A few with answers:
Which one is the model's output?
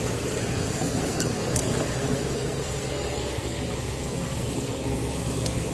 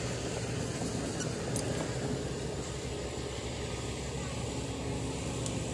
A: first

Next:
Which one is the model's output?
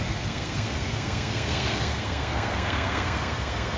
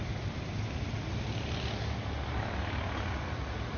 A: first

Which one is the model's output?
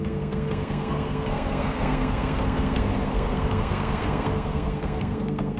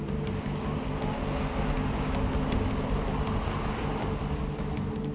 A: first